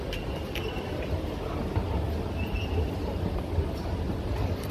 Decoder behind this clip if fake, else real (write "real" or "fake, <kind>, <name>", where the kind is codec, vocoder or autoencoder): real